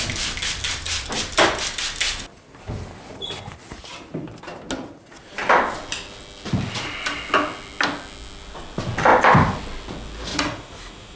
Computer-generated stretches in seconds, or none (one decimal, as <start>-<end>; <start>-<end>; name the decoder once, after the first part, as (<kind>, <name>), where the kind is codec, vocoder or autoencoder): 10.3-11.2 (vocoder, Vocos)